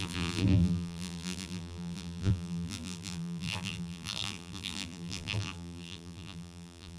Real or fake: fake